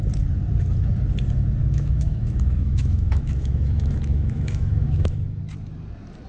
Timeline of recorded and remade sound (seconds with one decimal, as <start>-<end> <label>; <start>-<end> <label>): 0.0-1.6 recorded; 1.6-5.4 remade; 5.4-6.3 recorded

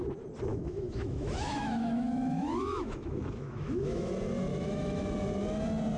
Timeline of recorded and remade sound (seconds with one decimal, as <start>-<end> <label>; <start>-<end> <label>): 0.0-0.5 recorded; 0.5-4.1 remade; 4.1-4.5 recorded; 4.5-5.0 remade; 5.0-6.0 recorded

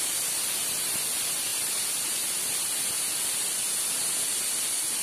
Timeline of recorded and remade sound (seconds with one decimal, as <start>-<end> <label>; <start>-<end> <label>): 0.0-5.0 recorded

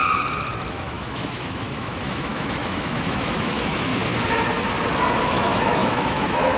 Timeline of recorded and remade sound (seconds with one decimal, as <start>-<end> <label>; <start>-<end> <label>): 0.0-0.7 recorded; 0.7-3.9 remade; 3.9-5.2 recorded; 5.2-6.6 remade

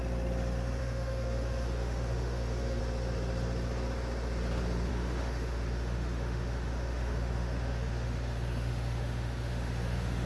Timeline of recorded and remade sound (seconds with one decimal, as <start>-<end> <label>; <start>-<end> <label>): 0.0-0.8 recorded; 0.8-2.8 remade; 2.8-4.9 recorded; 4.9-10.3 remade

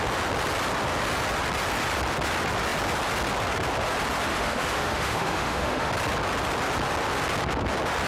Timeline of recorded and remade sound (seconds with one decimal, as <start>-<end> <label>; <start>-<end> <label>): 0.0-4.3 recorded; 4.3-5.9 remade; 5.9-8.1 recorded

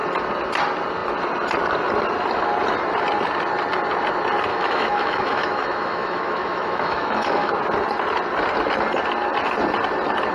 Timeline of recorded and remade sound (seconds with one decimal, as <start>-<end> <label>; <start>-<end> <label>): 0.0-4.5 recorded; 4.5-7.5 remade; 7.5-10.3 recorded

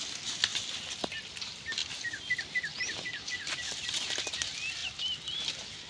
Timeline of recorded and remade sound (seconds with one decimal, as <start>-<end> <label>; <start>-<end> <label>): 0.0-5.9 recorded